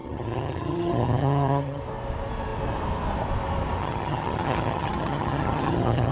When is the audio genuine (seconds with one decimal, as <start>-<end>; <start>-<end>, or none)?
1.8-3.8